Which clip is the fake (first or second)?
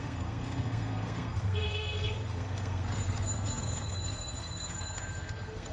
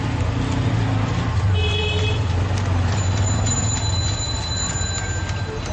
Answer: first